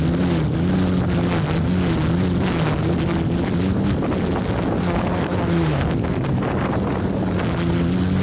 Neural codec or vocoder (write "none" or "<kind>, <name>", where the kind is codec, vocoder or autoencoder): none